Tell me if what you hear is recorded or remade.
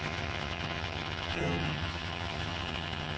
remade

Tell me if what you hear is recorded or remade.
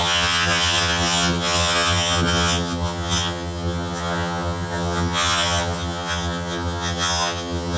remade